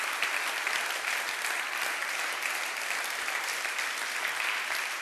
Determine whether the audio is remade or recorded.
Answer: recorded